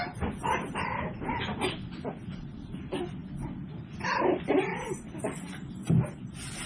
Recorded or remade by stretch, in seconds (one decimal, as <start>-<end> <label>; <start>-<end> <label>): 0.0-3.2 recorded; 3.2-6.7 remade